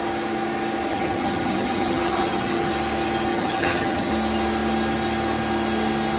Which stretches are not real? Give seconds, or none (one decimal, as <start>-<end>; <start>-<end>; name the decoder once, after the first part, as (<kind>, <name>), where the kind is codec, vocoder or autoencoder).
0.9-2.7 (vocoder, HiFi-GAN); 3.3-4.1